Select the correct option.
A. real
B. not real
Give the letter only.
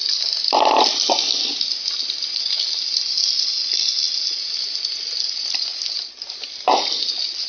A